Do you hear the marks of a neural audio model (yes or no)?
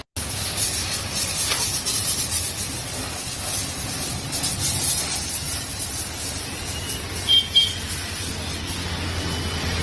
no